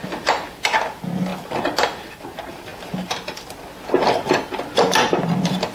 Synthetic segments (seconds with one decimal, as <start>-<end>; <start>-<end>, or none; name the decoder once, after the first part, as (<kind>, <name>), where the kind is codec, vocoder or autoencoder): none